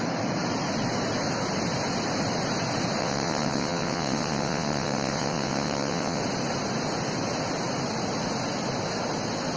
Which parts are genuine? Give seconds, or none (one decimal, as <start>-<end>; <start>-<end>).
0.0-3.0; 6.2-9.6